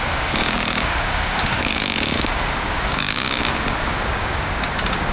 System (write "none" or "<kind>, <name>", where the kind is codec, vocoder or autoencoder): codec, DAC